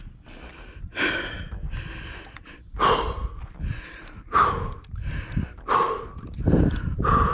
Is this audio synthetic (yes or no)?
no